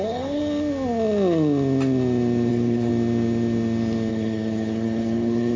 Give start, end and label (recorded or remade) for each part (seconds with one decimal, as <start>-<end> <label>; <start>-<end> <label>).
0.0-0.4 remade; 0.4-2.5 recorded; 2.5-2.9 remade; 2.9-4.1 recorded; 4.1-5.6 remade